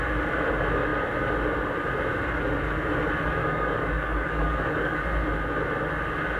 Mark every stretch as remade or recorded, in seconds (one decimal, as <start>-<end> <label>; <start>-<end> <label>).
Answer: 0.0-3.4 recorded; 3.4-5.0 remade; 5.0-6.4 recorded